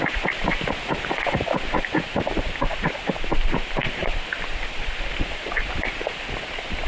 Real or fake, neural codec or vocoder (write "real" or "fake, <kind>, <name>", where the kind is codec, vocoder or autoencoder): fake, vocoder, BigVGAN v2